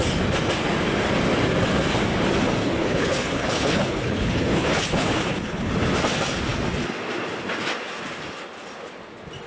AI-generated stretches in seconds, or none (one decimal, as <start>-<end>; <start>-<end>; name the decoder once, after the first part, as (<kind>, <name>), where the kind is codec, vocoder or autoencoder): 2.6-5.7 (codec, HILCodec)